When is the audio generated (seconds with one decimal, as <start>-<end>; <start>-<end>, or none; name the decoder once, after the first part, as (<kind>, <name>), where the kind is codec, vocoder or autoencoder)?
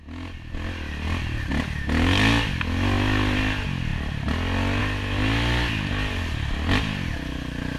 none